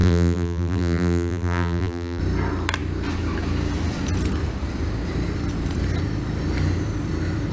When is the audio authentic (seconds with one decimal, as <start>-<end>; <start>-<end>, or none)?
2.2-7.5